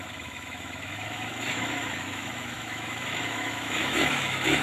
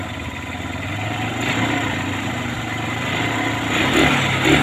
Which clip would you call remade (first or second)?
first